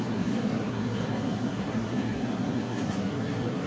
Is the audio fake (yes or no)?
yes